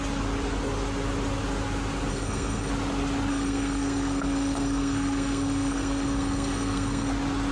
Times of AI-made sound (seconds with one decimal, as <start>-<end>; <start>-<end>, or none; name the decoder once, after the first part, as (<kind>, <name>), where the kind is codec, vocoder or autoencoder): 2.1-2.7 (codec, SNAC); 3.3-7.1